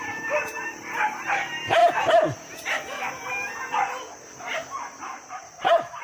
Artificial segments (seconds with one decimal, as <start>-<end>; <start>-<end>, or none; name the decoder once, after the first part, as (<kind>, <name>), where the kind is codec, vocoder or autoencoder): 0.0-1.8 (vocoder, BigVGAN v2); 3.3-6.0